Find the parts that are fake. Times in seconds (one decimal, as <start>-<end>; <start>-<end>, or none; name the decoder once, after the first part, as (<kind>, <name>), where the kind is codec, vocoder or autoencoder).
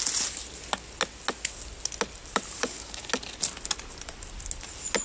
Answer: 2.2-3.0 (vocoder, BigVGAN v2)